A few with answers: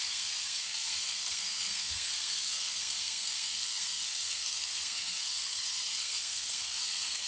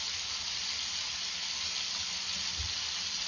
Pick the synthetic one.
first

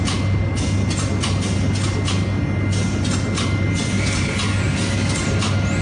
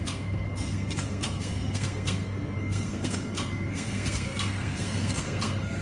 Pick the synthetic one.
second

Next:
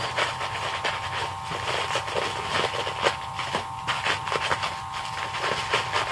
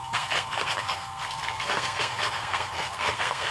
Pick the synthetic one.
second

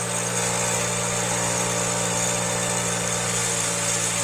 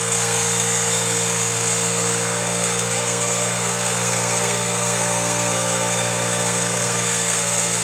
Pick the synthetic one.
second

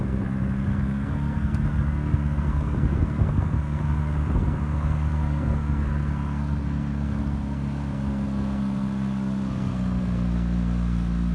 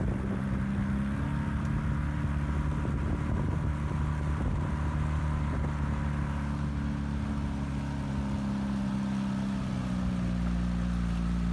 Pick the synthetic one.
first